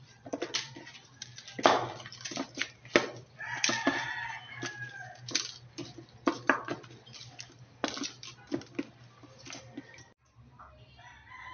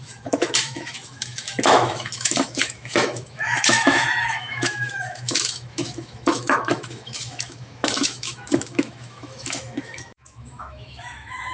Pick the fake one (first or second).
second